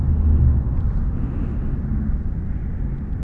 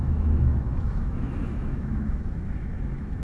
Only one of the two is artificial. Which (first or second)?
second